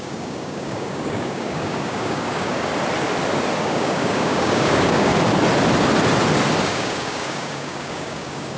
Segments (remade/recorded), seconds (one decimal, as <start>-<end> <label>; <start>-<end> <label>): 0.0-2.7 remade; 2.7-3.6 recorded; 3.6-5.1 remade; 5.1-6.6 recorded; 6.6-8.6 remade